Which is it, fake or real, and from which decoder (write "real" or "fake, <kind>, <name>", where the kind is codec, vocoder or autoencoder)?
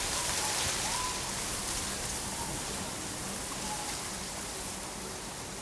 real